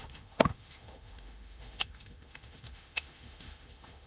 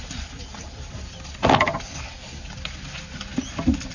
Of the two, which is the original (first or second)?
second